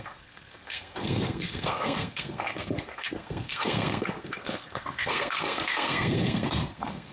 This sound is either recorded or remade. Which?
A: remade